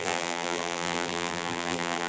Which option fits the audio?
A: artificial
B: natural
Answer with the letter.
A